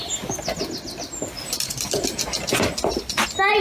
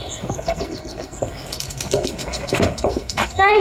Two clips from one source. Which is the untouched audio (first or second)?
first